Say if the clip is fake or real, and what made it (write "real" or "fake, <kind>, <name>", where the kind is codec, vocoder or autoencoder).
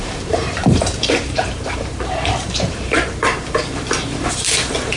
fake, vocoder, BigVGAN v2